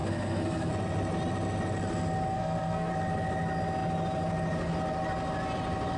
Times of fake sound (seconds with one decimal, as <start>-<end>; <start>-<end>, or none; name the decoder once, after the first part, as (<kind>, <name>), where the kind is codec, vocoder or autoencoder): 0.0-0.7 (codec, SNAC); 2.3-2.9